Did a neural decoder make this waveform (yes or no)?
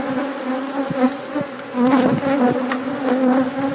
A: no